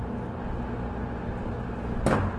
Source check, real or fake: real